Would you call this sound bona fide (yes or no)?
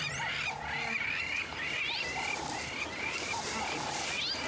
yes